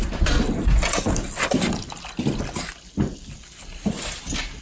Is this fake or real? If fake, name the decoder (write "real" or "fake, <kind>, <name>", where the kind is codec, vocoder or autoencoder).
real